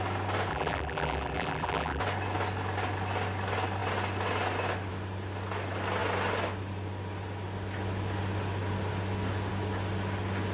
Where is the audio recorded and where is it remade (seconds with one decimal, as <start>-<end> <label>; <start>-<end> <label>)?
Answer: 0.0-0.5 recorded; 0.5-2.0 remade; 2.0-10.5 recorded

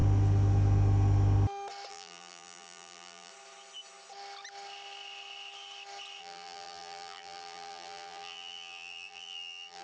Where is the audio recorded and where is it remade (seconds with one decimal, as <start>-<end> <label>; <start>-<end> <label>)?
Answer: 0.0-1.9 recorded; 1.9-3.3 remade; 3.3-6.2 recorded; 6.2-9.8 remade

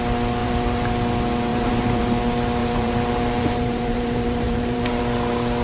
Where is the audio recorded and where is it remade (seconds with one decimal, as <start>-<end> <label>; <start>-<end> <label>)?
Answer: 0.0-0.4 recorded; 0.4-0.9 remade; 0.9-1.5 recorded; 1.5-2.0 remade; 2.0-2.6 recorded; 2.6-5.0 remade; 5.0-5.6 recorded

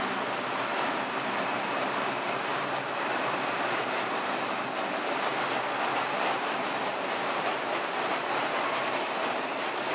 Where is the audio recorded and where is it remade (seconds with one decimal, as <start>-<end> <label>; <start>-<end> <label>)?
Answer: 0.0-0.7 recorded; 0.7-4.6 remade; 4.6-5.9 recorded; 5.9-8.5 remade; 8.5-9.9 recorded

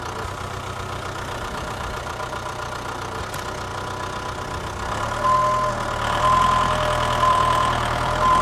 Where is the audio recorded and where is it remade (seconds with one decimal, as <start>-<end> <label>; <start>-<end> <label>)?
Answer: 0.0-3.7 remade; 3.7-5.7 recorded; 5.7-8.4 remade

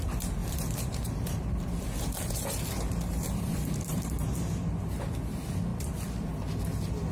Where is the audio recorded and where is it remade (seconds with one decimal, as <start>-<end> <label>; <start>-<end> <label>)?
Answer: 0.0-0.4 recorded; 0.4-4.3 remade; 4.3-7.1 recorded

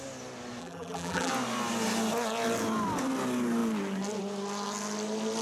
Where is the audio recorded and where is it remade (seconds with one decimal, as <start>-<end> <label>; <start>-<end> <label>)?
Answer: 0.0-0.6 recorded; 0.6-1.3 remade; 1.3-5.4 recorded

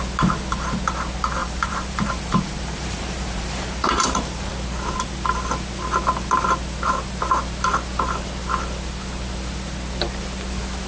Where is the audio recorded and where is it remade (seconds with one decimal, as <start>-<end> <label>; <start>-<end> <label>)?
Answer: 0.0-1.4 recorded; 1.4-4.5 remade; 4.5-10.9 recorded